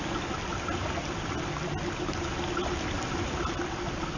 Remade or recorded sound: recorded